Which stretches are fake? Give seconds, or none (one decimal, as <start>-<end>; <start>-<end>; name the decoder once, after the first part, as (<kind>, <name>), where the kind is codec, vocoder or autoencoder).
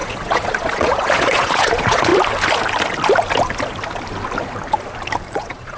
0.0-2.1 (vocoder, Vocos); 5.3-5.8